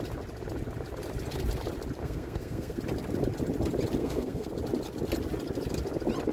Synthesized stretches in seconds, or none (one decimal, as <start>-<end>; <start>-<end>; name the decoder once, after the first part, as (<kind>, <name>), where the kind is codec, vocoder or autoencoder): 2.0-2.8 (codec, SNAC); 4.0-4.5